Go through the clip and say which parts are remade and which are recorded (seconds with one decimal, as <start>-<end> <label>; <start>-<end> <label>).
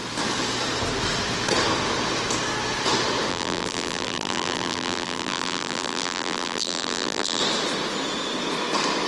0.0-3.3 recorded; 3.3-7.4 remade; 7.4-9.1 recorded